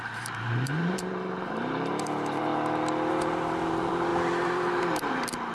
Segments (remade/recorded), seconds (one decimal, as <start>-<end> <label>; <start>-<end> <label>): 0.0-2.5 remade; 2.5-3.1 recorded; 3.1-5.5 remade